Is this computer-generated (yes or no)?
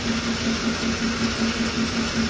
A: no